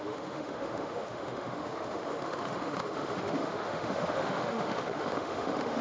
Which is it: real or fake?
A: fake